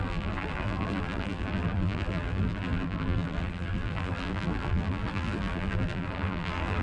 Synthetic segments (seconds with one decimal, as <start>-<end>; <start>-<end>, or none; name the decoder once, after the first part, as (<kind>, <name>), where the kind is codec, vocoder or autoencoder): 0.0-6.8 (vocoder, BigVGAN v2)